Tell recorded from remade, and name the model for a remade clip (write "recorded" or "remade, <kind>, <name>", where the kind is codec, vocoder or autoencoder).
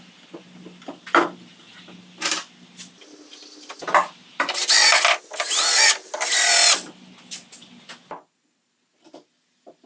recorded